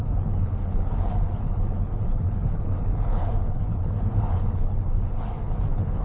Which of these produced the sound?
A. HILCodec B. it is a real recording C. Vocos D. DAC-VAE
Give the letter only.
A